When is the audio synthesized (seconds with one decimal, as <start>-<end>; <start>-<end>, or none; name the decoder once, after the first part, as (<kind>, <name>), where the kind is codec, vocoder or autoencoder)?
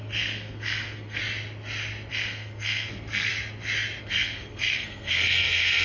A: 0.0-1.2 (codec, SNAC); 2.1-3.3; 4.0-5.8